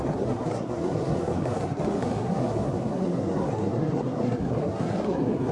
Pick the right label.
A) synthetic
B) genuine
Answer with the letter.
A